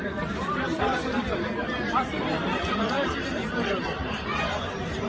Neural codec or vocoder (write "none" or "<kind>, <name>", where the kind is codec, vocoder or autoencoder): vocoder, BigVGAN v2